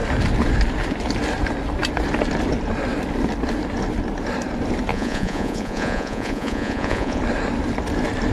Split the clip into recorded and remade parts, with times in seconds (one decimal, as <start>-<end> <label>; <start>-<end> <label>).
0.0-4.9 recorded; 4.9-7.2 remade; 7.2-8.3 recorded